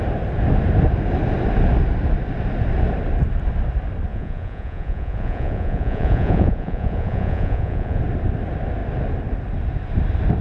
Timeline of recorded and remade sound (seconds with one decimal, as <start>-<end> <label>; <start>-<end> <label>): 0.0-4.1 recorded; 4.1-8.0 remade; 8.0-10.4 recorded